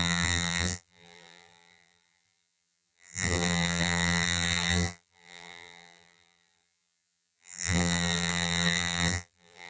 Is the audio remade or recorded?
remade